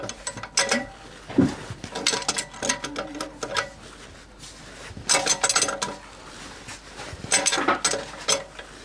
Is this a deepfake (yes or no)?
no